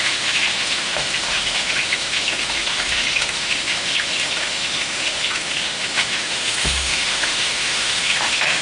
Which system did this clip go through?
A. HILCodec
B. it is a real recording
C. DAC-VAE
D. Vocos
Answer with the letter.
C